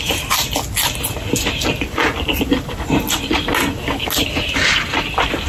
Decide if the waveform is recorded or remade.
recorded